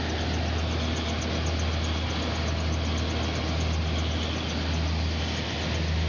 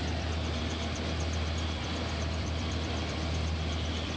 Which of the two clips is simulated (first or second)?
second